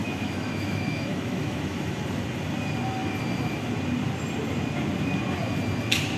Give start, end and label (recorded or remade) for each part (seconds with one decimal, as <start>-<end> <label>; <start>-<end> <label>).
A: 0.0-2.0 remade; 2.0-6.2 recorded